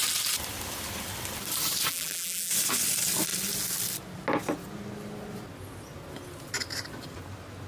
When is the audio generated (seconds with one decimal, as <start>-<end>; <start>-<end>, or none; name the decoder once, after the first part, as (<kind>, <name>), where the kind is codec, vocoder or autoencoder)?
1.9-2.5 (vocoder, BigVGAN v2)